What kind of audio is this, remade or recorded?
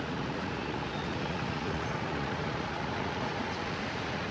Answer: remade